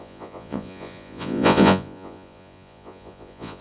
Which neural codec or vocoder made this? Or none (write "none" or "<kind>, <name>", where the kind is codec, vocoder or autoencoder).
vocoder, Vocos